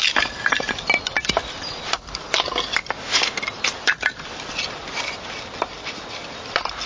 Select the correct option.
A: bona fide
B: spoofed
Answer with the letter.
A